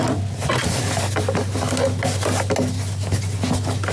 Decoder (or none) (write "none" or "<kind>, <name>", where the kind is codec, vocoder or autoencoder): none